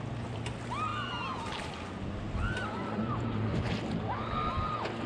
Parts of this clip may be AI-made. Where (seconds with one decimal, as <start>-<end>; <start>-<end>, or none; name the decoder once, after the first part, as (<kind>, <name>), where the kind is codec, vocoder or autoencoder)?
2.7-3.7 (vocoder, Vocos)